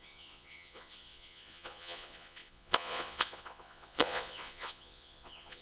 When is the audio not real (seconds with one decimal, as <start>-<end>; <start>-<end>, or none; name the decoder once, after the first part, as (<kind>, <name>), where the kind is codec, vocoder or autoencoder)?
0.0-5.6 (vocoder, Vocos)